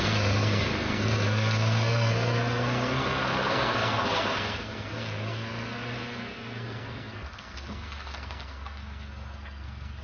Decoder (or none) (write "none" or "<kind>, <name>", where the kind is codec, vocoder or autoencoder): codec, SNAC